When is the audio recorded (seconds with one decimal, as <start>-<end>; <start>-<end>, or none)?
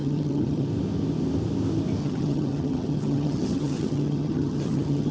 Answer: 0.7-2.0